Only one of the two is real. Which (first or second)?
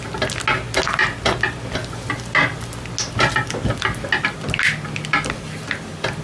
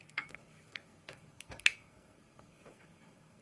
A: first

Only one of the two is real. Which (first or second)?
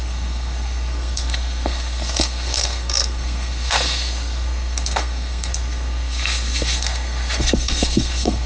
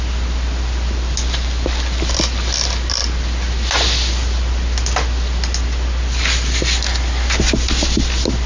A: second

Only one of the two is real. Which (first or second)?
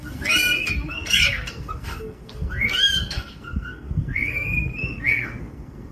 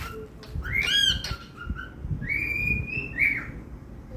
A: second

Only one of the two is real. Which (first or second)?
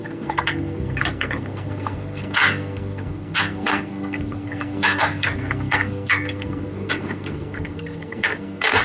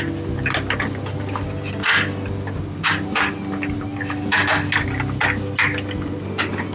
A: second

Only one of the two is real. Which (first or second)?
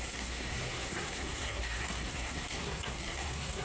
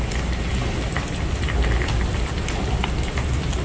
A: second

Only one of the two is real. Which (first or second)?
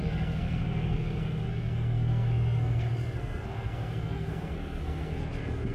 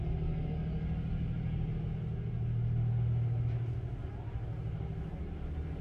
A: second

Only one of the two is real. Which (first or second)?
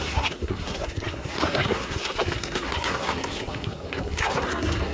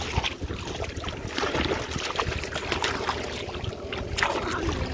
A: second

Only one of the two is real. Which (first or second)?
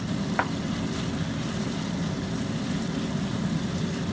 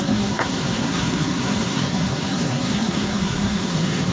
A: first